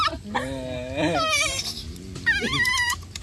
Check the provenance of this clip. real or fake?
real